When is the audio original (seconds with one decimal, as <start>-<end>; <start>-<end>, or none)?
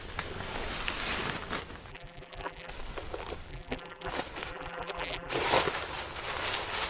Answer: 0.0-1.9; 2.7-3.5; 4.1-4.5; 5.3-6.9